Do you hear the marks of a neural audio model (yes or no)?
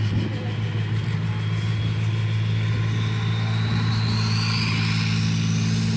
no